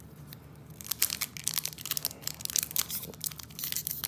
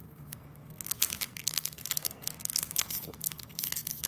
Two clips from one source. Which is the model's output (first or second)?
second